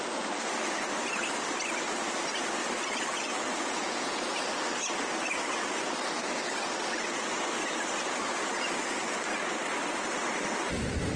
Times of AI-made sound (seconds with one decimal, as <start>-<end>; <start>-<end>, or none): 3.5-4.5